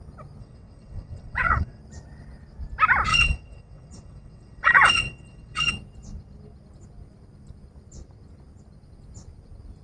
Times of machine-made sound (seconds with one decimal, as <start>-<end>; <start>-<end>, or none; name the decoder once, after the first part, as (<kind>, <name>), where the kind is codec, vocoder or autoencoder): 0.4-1.8 (vocoder, WaveNeXt); 3.1-5.7